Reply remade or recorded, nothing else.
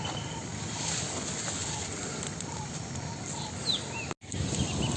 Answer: recorded